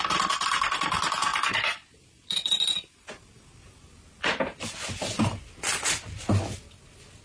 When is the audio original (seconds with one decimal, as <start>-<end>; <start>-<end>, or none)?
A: 0.0-7.2